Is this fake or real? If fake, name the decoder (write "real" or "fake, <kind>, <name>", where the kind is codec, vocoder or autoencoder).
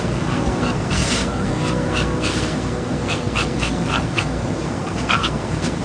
fake, codec, SNAC